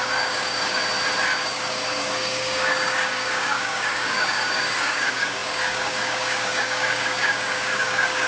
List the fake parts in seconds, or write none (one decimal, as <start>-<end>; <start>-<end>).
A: 0.0-0.8; 1.4-8.3